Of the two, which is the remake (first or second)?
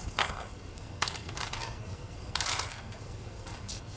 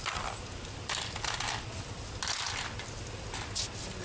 first